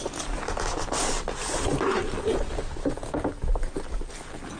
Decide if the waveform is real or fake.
real